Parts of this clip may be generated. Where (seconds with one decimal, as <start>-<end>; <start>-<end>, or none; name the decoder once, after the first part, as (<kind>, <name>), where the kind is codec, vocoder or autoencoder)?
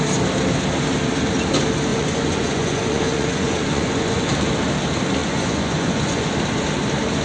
1.9-4.3 (vocoder, Vocos); 5.2-6.3